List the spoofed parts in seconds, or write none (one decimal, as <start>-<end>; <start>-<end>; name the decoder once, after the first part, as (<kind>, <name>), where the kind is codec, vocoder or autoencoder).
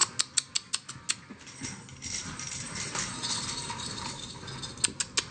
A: 2.2-4.5 (vocoder, BigVGAN v2)